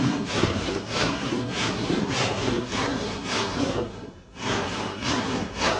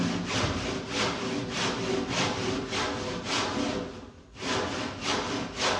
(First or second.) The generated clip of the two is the first